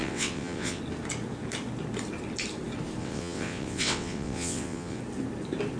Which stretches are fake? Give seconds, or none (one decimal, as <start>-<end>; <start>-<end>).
0.0-0.8; 3.0-5.0